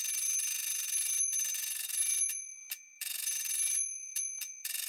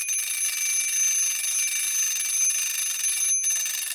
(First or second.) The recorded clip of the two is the second